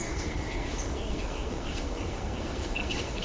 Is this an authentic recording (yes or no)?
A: no